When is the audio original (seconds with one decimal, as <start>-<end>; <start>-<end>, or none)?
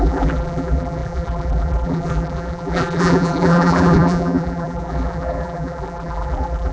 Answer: none